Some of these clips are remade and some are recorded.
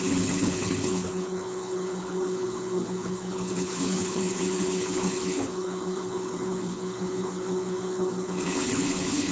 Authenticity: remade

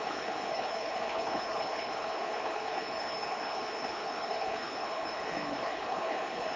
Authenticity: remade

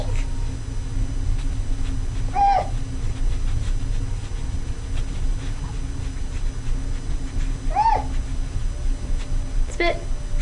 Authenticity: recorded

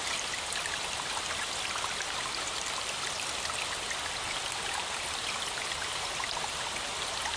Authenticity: recorded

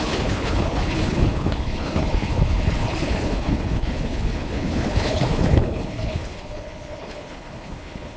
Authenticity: remade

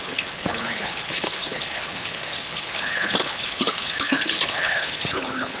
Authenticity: remade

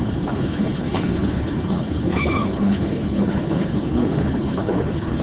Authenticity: remade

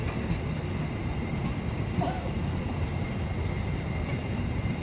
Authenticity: recorded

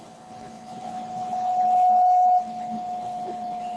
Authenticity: remade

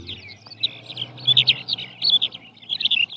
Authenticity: recorded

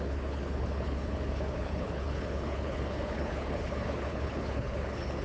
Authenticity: remade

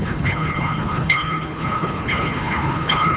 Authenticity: remade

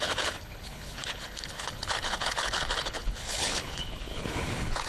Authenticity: remade